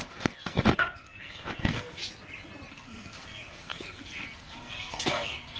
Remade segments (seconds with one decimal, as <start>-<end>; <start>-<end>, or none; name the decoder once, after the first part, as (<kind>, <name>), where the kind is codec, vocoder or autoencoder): 0.0-2.0 (codec, SNAC); 2.7-5.6